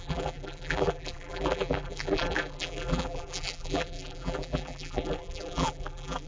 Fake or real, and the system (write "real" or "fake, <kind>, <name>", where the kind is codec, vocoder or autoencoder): fake, vocoder, BigVGAN v2